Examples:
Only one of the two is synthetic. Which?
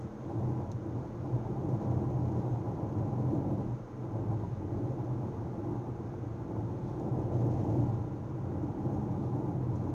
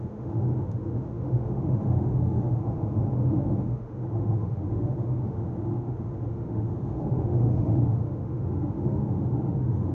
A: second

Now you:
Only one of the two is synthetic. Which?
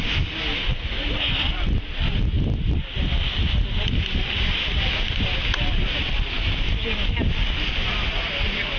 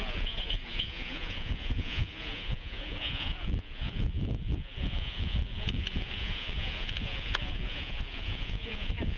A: second